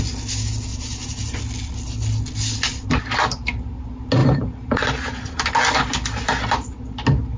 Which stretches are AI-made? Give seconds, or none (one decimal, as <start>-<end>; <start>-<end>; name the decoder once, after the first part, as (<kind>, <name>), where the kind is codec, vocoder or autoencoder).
0.7-1.4 (vocoder, BigVGAN v2); 4.2-5.5